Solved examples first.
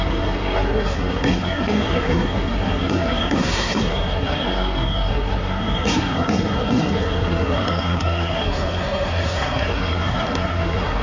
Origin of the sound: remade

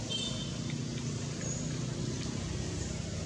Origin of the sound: recorded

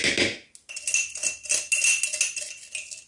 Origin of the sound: recorded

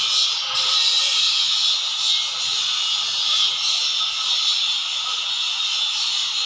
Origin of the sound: recorded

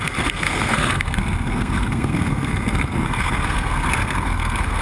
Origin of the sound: remade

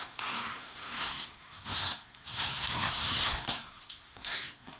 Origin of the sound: remade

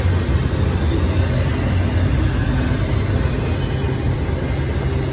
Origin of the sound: recorded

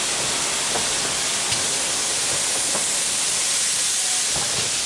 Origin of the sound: recorded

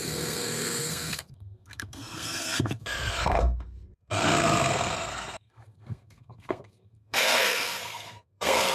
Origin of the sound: remade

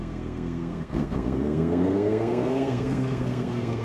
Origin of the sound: remade